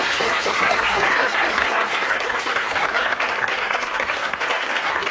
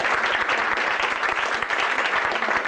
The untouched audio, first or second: second